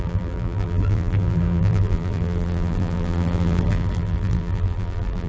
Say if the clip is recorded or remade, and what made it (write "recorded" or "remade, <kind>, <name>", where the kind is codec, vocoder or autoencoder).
remade, vocoder, BigVGAN v2